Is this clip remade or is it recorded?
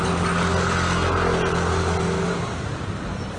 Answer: recorded